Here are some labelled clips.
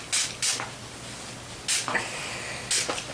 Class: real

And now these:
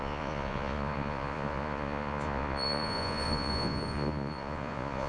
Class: fake